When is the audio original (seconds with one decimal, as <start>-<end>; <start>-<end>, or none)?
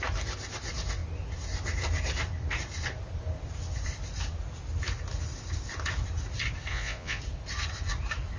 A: 0.0-6.7; 7.2-8.4